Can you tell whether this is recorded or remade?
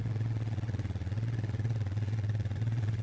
remade